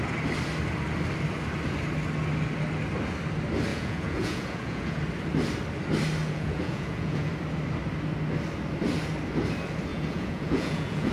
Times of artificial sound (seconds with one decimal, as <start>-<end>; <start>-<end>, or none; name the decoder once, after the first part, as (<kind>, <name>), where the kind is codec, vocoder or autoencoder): 3.7-5.0 (vocoder, Vocos); 6.2-7.3; 9.9-11.1